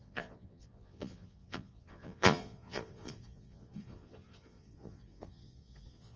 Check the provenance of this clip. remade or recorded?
remade